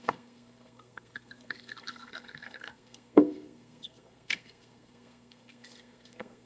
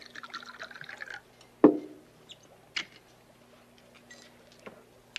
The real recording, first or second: second